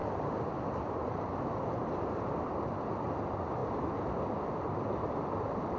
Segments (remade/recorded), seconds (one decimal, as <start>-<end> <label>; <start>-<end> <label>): 0.0-5.8 recorded